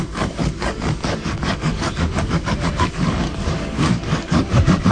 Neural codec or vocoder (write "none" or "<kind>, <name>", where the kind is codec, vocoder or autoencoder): codec, DAC